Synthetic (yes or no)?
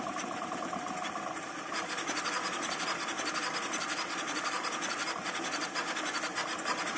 no